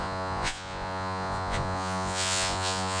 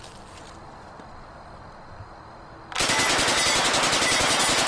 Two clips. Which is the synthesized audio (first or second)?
first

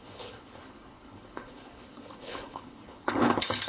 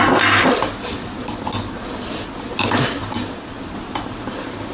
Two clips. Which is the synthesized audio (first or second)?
first